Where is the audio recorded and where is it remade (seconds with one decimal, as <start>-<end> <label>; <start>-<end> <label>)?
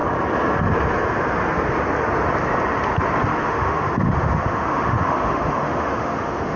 0.0-3.3 recorded; 3.3-6.6 remade